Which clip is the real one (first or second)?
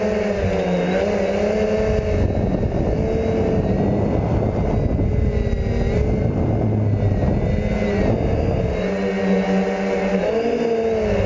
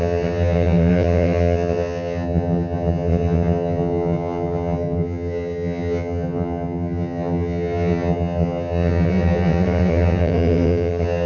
first